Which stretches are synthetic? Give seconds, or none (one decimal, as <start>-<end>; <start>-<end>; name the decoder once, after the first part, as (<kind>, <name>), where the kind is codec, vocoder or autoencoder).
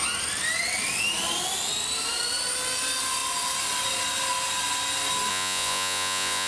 5.3-6.5 (vocoder, Vocos)